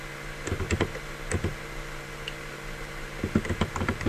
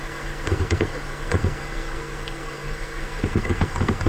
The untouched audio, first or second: first